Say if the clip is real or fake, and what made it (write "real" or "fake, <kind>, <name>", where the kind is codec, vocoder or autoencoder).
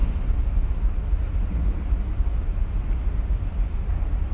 real